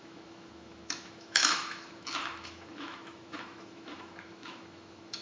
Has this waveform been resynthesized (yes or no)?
yes